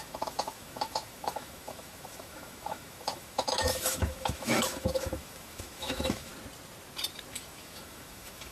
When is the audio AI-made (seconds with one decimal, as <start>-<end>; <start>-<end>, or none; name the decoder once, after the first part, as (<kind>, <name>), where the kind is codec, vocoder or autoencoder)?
0.0-6.3 (autoencoder, DAC-VAE); 7.3-8.5